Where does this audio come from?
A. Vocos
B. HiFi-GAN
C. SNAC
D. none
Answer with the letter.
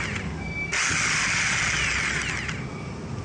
D